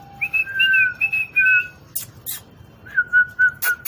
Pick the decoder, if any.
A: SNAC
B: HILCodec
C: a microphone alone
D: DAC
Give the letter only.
C